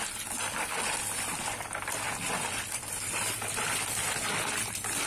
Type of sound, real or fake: fake